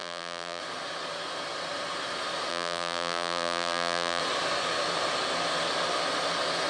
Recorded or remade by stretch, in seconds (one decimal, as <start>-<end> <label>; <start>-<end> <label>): 0.0-0.6 remade; 0.6-2.5 recorded; 2.5-4.2 remade; 4.2-6.7 recorded